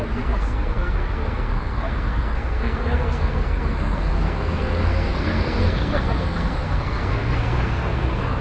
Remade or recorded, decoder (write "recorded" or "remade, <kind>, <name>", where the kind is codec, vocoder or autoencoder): remade, codec, SNAC